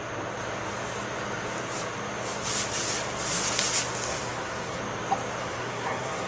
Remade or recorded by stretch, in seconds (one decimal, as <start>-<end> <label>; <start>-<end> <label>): 0.0-4.1 recorded; 4.1-4.8 remade; 4.8-5.4 recorded; 5.4-6.3 remade